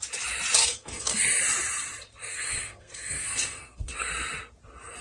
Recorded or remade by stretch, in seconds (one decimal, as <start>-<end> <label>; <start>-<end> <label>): 0.0-0.6 recorded; 0.6-1.2 remade; 1.2-2.3 recorded; 2.3-4.1 remade; 4.1-5.0 recorded